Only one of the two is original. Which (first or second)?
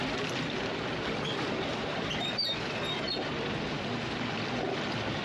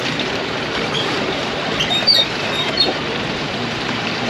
first